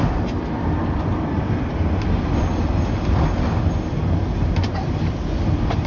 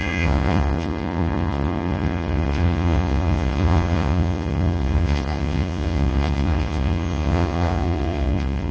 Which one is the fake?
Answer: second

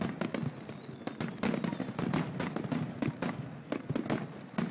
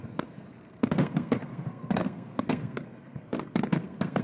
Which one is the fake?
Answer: second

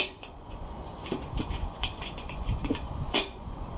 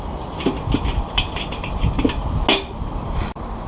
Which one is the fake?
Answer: first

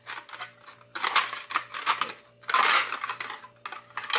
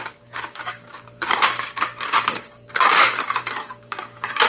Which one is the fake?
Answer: second